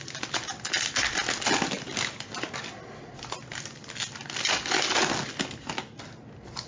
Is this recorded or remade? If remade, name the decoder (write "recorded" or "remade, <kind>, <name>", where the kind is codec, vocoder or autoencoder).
recorded